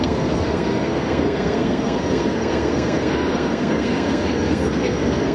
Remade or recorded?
remade